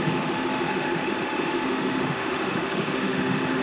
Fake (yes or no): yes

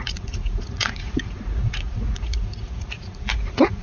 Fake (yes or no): yes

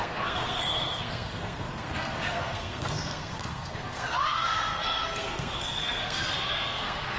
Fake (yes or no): yes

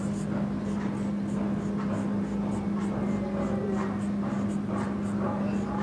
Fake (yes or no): no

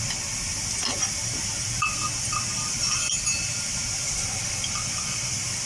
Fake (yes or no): no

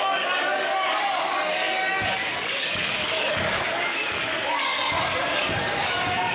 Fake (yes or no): yes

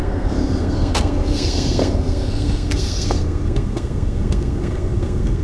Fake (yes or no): yes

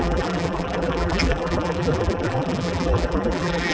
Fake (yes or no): yes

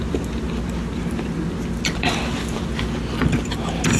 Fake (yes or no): no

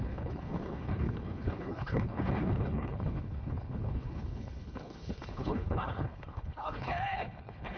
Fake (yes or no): yes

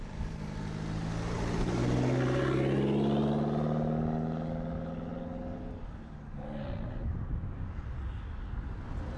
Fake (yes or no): no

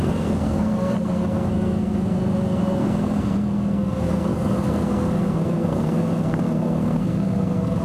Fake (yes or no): yes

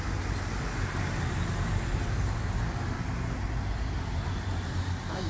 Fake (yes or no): no